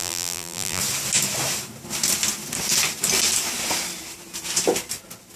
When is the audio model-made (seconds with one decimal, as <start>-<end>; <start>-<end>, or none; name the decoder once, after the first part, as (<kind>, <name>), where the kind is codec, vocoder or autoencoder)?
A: 0.0-0.8 (vocoder, BigVGAN v2)